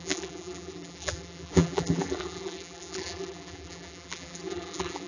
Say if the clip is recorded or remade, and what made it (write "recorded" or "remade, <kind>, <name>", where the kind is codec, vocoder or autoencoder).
remade, vocoder, BigVGAN v2